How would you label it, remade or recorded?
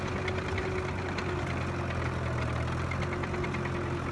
recorded